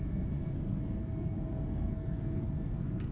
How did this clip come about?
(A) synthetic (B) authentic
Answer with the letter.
A